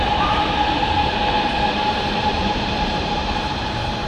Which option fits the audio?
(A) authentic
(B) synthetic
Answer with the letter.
B